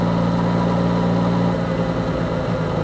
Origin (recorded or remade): recorded